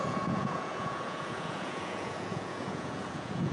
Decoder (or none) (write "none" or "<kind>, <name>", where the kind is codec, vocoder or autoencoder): vocoder, Vocos